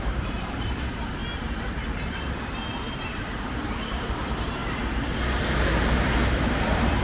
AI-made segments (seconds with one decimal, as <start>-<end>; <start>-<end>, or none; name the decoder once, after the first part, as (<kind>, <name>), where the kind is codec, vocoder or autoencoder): 0.0-1.2 (vocoder, BigVGAN v2); 2.0-7.0

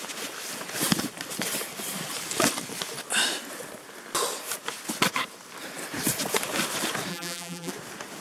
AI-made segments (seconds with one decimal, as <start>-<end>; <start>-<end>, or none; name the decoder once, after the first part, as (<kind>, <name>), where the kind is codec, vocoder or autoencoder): 7.1-7.7 (vocoder, BigVGAN v2)

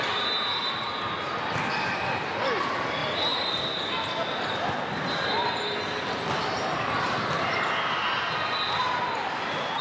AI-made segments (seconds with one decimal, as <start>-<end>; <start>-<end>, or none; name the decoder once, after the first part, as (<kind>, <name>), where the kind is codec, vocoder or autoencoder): 3.0-3.8 (vocoder, BigVGAN v2)